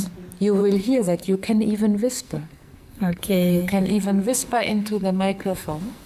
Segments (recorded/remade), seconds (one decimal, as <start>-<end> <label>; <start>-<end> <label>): 0.0-0.6 recorded; 0.6-1.5 remade; 1.5-2.0 recorded; 2.0-6.1 remade